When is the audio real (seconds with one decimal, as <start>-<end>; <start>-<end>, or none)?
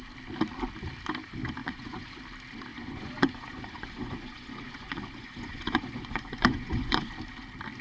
0.0-1.6; 2.2-2.7; 7.1-7.8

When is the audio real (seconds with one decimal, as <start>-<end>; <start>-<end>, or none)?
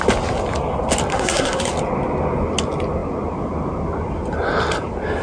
0.0-1.1; 1.7-5.2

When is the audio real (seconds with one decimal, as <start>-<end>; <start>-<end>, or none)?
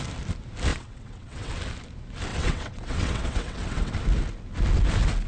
0.0-0.7; 1.5-2.3; 3.9-5.3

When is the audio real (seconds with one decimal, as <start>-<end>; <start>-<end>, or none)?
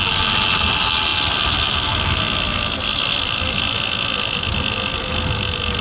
0.0-5.8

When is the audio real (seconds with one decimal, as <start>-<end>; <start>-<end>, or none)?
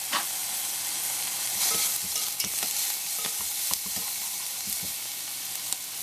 0.0-6.0